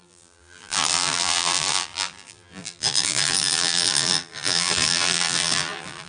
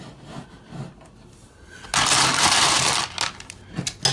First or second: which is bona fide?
second